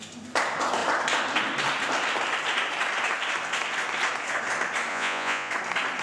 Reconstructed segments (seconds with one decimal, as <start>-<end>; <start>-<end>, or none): 4.9-5.5